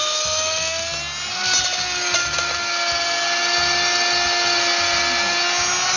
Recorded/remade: recorded